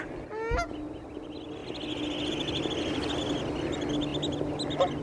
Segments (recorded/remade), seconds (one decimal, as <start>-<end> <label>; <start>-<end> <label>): 0.0-5.0 recorded